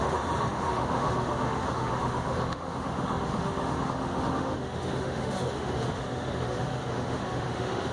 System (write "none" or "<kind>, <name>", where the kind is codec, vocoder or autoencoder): autoencoder, DAC-VAE